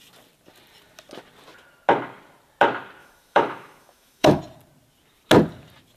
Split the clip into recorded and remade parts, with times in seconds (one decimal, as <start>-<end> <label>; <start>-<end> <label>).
0.0-3.0 recorded; 3.0-4.4 remade; 4.4-6.0 recorded